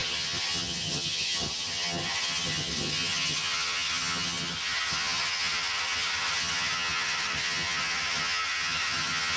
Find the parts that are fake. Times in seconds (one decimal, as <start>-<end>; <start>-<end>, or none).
0.0-9.4